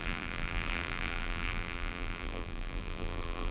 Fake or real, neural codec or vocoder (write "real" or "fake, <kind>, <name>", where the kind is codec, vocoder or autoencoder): fake, vocoder, BigVGAN v2